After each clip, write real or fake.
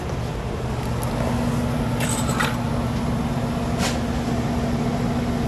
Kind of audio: real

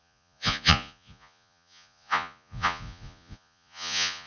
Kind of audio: fake